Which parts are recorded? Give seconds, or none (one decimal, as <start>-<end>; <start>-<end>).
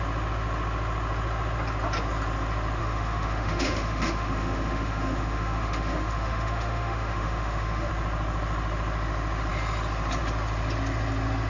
0.0-2.8; 7.9-11.5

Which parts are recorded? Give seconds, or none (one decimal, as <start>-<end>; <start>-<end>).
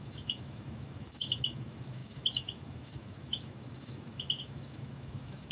none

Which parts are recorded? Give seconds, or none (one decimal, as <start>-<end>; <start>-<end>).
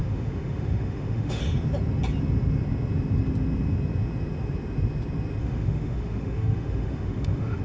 1.4-5.4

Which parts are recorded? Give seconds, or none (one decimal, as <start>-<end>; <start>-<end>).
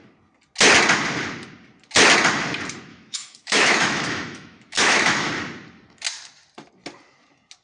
0.0-2.9; 5.3-7.6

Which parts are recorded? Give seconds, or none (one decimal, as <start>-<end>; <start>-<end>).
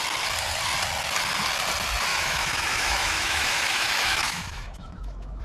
0.0-2.1